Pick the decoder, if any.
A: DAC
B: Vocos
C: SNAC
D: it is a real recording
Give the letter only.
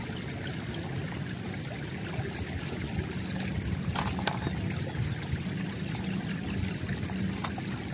D